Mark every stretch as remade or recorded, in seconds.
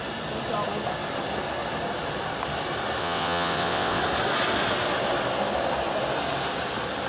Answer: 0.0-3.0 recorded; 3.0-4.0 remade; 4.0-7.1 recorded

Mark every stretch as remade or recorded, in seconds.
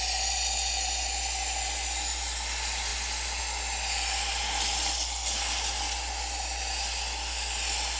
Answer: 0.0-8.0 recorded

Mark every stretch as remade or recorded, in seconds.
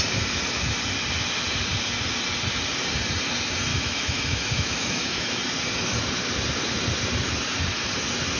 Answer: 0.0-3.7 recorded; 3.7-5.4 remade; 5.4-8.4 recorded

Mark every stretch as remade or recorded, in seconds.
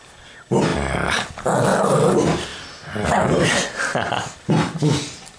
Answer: 0.0-5.4 recorded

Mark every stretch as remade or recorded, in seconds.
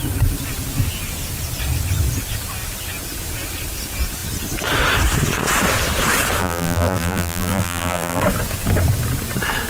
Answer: 0.0-6.4 recorded; 6.4-8.2 remade; 8.2-9.7 recorded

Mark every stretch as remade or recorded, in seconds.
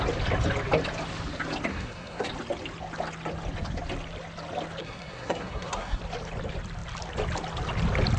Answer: 0.0-1.7 recorded; 1.7-2.3 remade; 2.3-4.8 recorded; 4.8-6.0 remade; 6.0-8.2 recorded